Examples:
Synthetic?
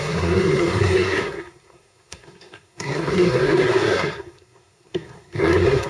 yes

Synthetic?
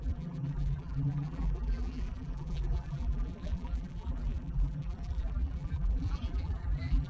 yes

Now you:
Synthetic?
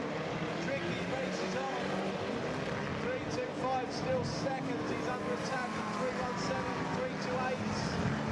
no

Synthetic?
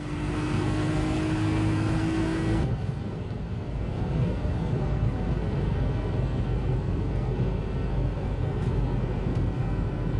yes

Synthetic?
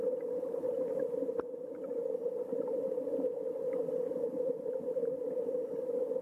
no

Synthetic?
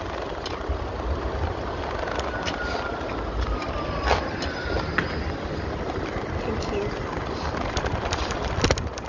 no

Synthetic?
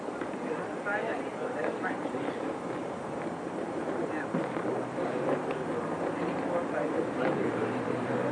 yes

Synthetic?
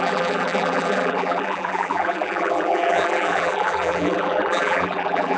yes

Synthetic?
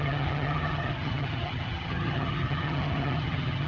yes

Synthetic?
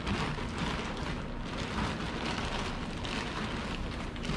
no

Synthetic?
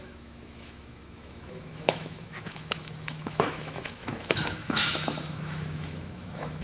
yes